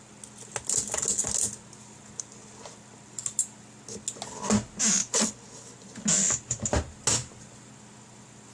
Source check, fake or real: real